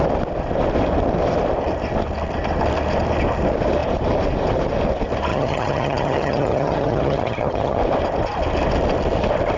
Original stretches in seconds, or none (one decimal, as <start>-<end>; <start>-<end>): 0.0-5.3; 7.8-9.6